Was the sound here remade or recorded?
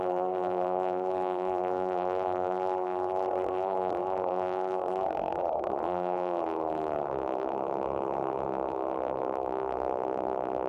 remade